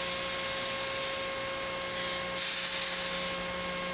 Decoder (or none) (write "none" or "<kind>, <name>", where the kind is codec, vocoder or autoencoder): none